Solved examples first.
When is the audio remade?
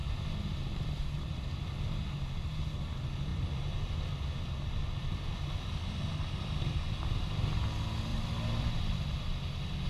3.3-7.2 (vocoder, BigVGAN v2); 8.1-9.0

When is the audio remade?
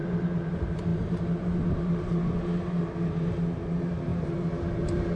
0.5-5.2 (vocoder, BigVGAN v2)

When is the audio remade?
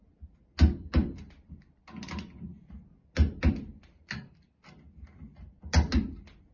none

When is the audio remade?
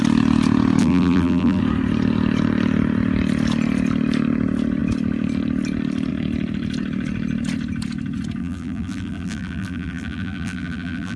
0.8-1.6 (vocoder, BigVGAN v2); 8.4-11.2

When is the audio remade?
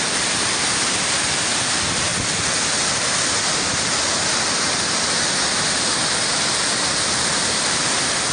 0.0-2.1 (vocoder, BigVGAN v2); 4.8-8.3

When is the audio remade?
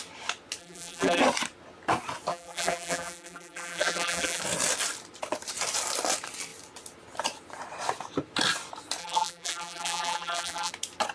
0.6-1.2 (vocoder, BigVGAN v2); 2.3-4.4; 9.0-10.7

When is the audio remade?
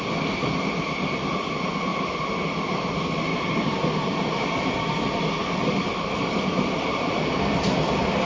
3.3-8.3 (vocoder, BigVGAN v2)